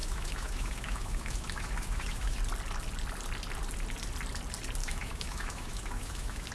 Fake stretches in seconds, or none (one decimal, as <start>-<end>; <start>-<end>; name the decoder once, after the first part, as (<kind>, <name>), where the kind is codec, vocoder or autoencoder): 0.0-2.4 (autoencoder, DAC-VAE); 4.8-6.5